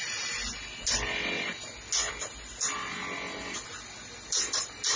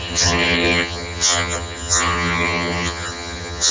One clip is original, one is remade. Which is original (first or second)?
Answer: first